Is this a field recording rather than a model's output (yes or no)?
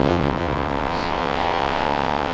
no